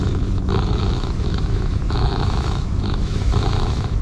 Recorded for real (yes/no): no